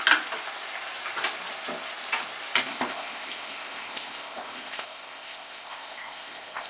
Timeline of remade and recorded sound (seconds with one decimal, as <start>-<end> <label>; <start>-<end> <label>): 0.0-2.7 recorded; 2.7-6.7 remade